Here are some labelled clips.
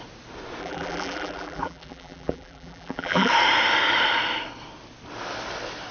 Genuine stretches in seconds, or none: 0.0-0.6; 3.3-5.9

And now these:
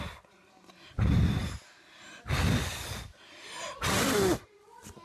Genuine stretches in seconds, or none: 0.0-5.0

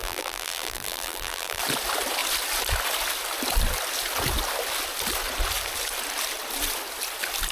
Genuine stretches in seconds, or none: 1.6-7.5

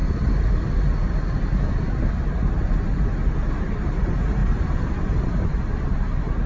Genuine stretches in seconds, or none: 0.0-4.4

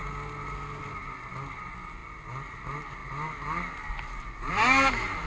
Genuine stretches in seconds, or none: 0.0-5.3

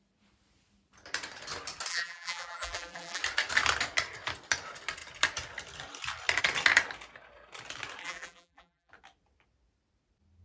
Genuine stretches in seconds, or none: 0.0-1.9; 3.2-8.0; 8.9-10.4

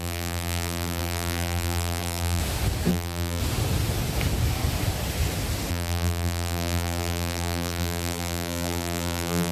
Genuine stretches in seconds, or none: 2.4-2.9; 3.4-5.7

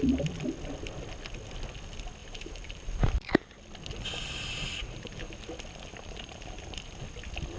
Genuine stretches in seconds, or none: 0.0-2.2; 3.6-4.8; 5.3-5.9; 7.0-7.6